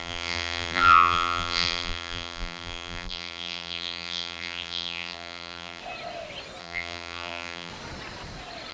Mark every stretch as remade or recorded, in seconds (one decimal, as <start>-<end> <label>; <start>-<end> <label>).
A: 0.0-5.8 remade; 5.8-6.6 recorded; 6.6-7.7 remade; 7.7-8.7 recorded